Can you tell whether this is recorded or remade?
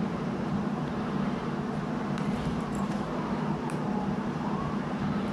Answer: remade